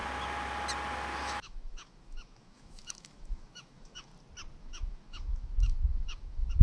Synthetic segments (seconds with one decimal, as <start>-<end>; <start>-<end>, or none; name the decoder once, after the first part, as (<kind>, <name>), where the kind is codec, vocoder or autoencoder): 1.2-4.1 (autoencoder, DAC-VAE); 4.6-6.6